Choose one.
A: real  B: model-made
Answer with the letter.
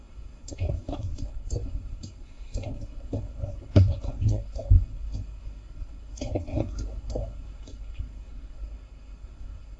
B